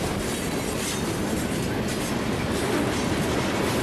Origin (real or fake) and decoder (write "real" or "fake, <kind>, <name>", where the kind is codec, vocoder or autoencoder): real